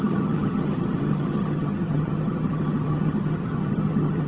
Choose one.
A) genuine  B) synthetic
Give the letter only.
B